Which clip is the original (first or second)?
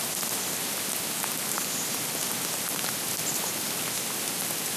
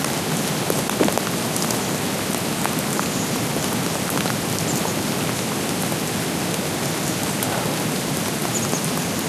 second